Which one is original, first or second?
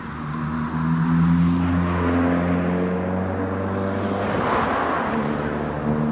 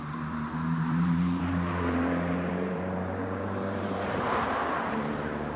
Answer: first